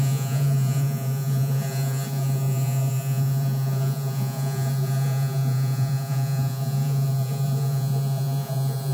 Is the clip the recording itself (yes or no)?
no